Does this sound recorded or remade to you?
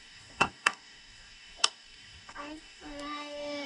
remade